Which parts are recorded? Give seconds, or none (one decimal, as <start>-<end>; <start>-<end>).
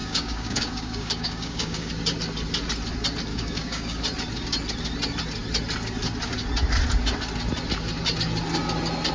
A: 1.9-3.3; 4.0-9.1